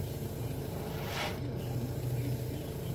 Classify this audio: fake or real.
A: real